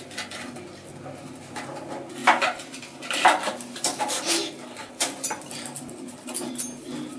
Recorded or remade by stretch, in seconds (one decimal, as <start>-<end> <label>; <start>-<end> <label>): 0.0-7.2 recorded